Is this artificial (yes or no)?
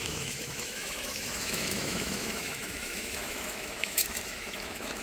yes